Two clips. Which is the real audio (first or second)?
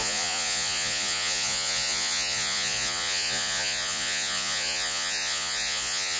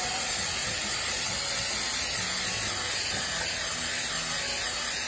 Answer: second